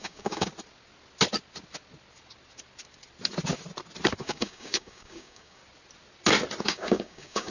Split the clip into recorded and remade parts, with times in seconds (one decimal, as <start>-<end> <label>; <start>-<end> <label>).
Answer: 0.0-0.5 remade; 0.5-4.2 recorded; 4.2-5.6 remade; 5.6-6.6 recorded; 6.6-7.5 remade

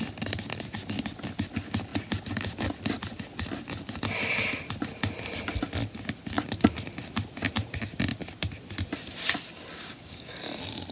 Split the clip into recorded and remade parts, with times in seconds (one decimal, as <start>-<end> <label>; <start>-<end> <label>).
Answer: 0.0-9.7 recorded; 9.7-10.4 remade; 10.4-10.9 recorded

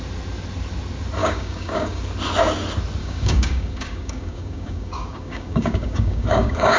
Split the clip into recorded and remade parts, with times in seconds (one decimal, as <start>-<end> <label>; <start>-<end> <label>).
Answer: 0.0-1.2 recorded; 1.2-2.0 remade; 2.0-3.0 recorded; 3.0-6.8 remade

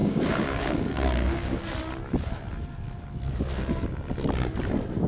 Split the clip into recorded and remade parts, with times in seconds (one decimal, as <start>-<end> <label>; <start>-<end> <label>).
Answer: 0.0-1.6 remade; 1.6-5.1 recorded